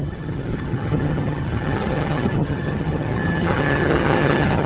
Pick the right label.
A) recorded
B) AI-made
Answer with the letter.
B